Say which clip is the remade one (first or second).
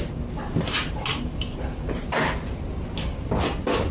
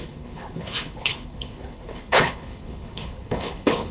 second